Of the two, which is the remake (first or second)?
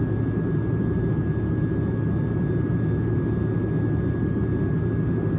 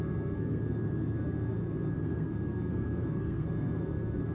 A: second